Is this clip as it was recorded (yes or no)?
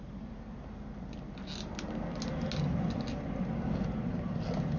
yes